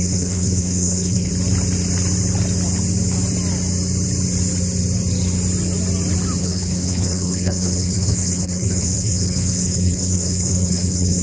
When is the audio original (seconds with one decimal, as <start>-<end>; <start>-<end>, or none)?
1.3-6.4